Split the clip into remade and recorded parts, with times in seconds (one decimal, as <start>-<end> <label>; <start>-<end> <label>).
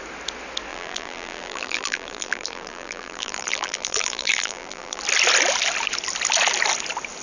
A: 0.0-0.7 recorded; 0.7-5.0 remade; 5.0-7.2 recorded